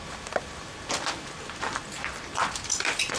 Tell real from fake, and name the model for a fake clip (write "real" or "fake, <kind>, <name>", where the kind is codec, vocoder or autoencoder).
fake, vocoder, BigVGAN v2